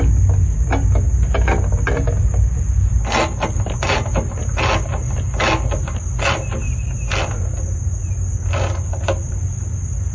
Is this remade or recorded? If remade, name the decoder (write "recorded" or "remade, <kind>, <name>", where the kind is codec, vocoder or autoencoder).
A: recorded